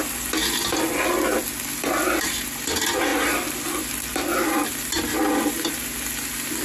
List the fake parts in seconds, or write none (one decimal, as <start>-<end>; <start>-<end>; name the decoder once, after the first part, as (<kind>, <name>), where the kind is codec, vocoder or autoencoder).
none